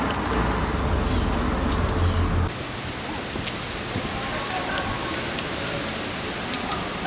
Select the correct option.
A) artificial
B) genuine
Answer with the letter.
B